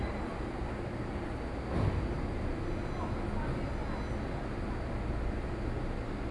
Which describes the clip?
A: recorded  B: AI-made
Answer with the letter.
A